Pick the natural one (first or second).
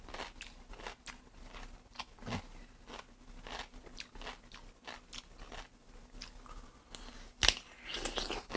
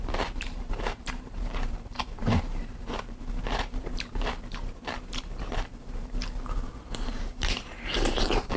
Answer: first